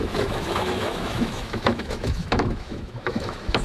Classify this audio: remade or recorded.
remade